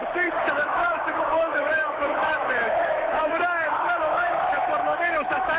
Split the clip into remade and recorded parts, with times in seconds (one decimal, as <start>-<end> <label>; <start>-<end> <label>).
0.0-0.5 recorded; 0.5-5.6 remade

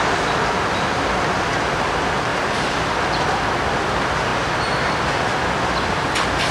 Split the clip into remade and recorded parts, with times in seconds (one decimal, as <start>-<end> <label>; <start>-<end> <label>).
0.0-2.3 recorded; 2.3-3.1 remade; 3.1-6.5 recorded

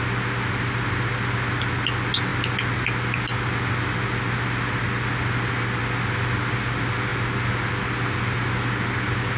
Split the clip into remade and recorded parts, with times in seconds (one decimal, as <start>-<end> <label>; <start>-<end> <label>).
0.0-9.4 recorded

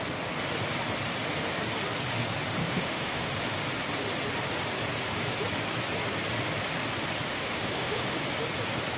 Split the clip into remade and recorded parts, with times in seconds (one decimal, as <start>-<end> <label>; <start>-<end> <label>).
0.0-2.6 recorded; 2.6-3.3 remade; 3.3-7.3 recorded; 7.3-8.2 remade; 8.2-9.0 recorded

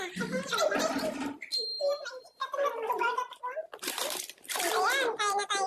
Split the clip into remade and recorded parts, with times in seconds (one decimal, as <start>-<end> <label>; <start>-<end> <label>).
0.0-5.7 remade

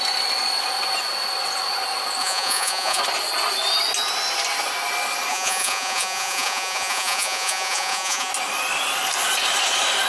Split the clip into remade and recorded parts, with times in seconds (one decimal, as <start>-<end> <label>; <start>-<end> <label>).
0.0-2.2 recorded; 2.2-3.0 remade; 3.0-5.3 recorded; 5.3-8.3 remade; 8.3-10.1 recorded

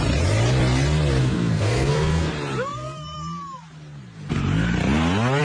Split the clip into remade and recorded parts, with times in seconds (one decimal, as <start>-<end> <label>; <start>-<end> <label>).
0.0-1.2 recorded; 1.2-2.3 remade; 2.3-5.4 recorded

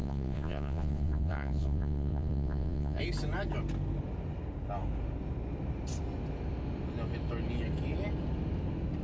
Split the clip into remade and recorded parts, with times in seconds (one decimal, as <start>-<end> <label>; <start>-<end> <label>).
0.0-3.0 remade; 3.0-9.0 recorded